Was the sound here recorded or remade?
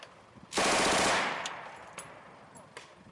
recorded